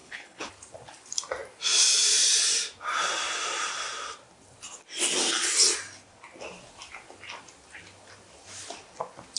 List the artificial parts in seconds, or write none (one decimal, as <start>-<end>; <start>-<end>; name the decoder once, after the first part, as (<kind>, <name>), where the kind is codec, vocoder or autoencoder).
0.0-0.5 (codec, HILCodec)